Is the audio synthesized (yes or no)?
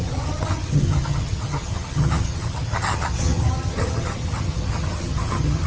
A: yes